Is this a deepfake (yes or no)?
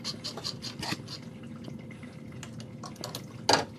no